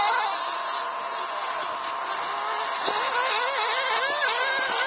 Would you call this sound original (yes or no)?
yes